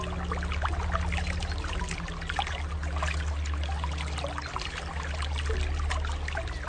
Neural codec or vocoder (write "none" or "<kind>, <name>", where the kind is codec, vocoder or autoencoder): none